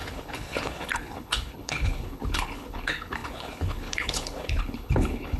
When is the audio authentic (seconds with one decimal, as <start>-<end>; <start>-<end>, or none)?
none